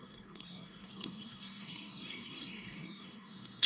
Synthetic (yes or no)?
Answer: yes